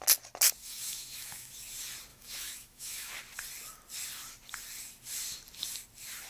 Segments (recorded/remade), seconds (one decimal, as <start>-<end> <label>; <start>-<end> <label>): 0.0-0.6 recorded; 0.6-1.5 remade; 1.5-2.1 recorded; 2.1-3.1 remade; 3.1-6.3 recorded